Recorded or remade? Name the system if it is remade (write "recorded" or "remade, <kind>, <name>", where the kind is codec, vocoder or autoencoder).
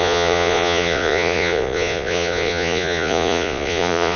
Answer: remade, vocoder, Vocos